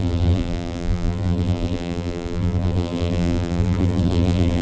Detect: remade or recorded remade